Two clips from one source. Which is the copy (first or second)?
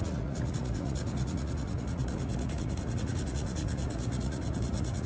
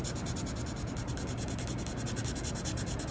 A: first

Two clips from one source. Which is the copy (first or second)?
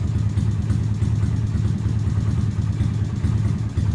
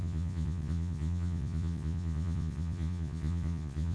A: second